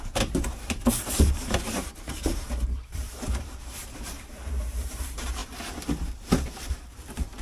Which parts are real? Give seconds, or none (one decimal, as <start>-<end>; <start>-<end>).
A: 5.4-6.3